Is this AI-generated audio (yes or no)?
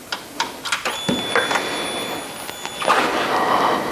no